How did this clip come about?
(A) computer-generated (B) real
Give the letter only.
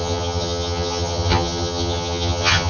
A